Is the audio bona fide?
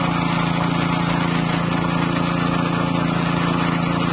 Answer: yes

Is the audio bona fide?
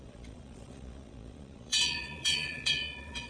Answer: no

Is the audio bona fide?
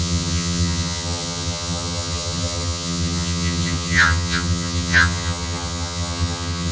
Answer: no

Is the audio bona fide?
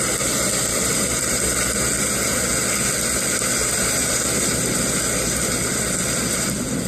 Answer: yes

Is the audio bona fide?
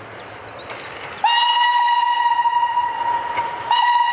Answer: yes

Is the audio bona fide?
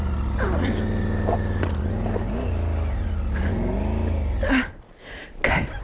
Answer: yes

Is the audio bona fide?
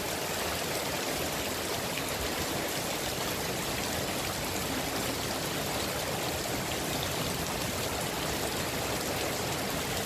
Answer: yes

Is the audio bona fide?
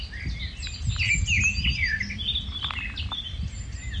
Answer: yes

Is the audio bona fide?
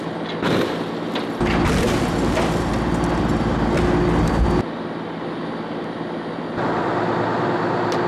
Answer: yes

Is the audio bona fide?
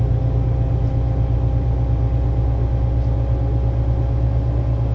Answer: yes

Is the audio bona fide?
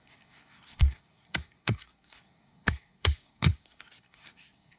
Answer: no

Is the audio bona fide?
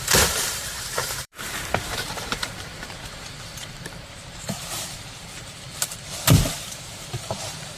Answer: no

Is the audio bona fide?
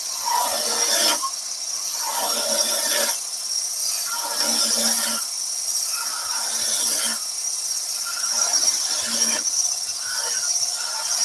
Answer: yes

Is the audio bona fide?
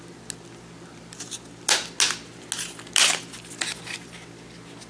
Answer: yes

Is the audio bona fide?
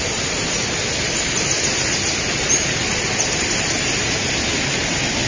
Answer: yes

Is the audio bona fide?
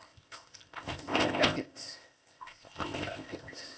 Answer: no